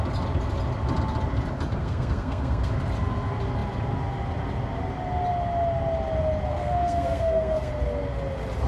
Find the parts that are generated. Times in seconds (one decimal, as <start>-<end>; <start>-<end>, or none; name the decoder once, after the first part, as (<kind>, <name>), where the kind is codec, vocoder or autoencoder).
1.8-2.7 (codec, SNAC); 6.5-7.7